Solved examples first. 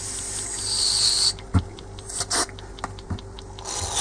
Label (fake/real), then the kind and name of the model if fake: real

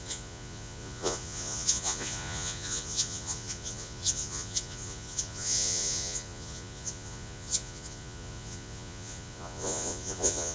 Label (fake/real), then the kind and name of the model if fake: fake, vocoder, Vocos